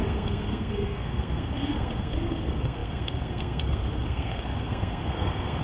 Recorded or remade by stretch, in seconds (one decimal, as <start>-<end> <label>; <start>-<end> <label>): 0.0-5.6 remade